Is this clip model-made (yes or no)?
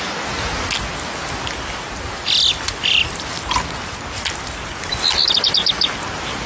no